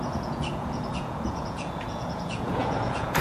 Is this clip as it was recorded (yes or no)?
no